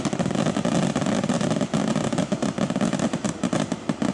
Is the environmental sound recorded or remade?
recorded